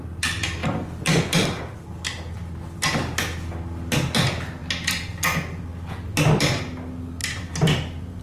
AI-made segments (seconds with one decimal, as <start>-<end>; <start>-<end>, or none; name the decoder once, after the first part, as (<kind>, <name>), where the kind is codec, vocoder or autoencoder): 0.6-1.6 (vocoder, BigVGAN v2); 7.2-8.2